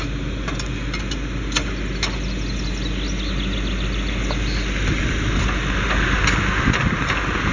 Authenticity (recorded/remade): recorded